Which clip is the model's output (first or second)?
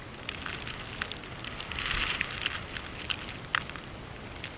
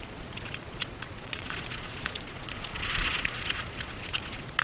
second